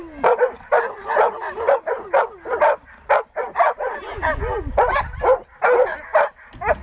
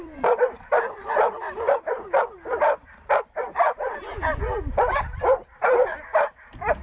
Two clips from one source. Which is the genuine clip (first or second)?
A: first